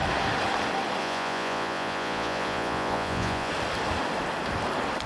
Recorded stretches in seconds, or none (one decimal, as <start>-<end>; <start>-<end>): 0.0-1.0; 3.5-5.1